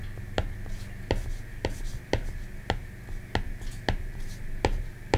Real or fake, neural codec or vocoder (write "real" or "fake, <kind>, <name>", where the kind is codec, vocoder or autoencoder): real